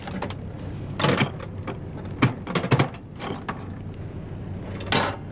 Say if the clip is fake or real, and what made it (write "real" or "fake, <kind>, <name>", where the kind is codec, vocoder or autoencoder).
real